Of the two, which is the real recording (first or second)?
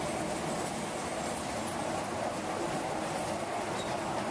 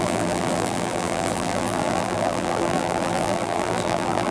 first